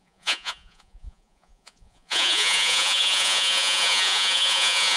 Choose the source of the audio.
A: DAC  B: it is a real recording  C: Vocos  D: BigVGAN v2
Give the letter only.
C